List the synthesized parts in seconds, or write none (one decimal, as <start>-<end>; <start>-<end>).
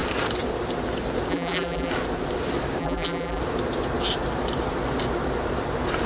1.3-1.9; 2.8-3.4